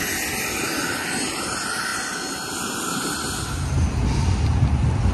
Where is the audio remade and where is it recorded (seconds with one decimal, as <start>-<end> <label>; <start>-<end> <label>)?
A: 0.0-5.1 recorded